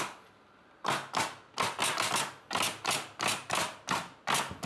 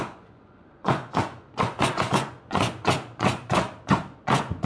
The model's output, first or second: second